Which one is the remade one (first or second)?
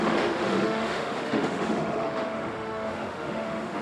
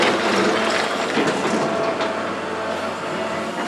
first